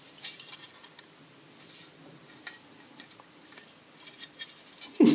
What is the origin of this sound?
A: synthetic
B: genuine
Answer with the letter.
B